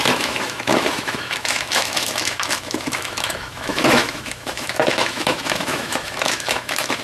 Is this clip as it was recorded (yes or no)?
no